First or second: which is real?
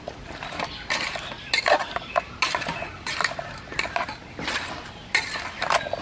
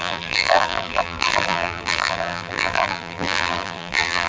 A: first